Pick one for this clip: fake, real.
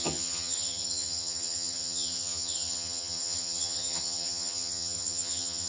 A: fake